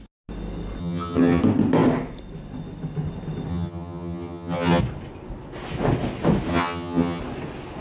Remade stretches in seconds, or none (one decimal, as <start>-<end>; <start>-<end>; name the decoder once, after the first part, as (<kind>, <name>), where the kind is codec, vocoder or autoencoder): 0.8-1.4 (vocoder, HiFi-GAN); 3.5-4.8; 6.5-7.2